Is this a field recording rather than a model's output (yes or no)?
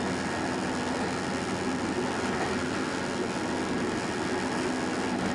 yes